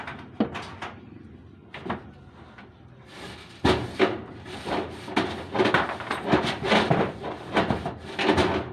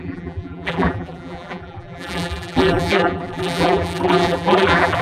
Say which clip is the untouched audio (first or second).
first